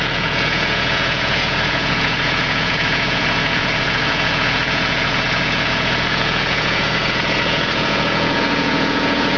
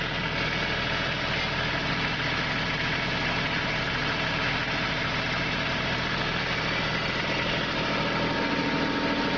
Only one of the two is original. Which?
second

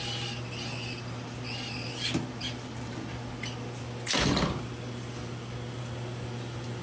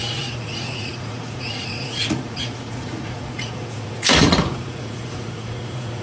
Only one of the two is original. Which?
first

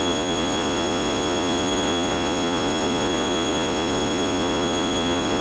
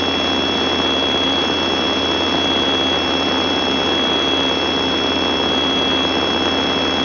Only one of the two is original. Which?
second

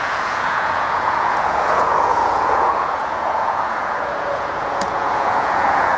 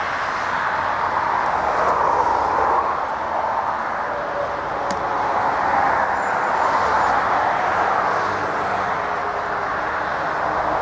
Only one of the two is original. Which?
second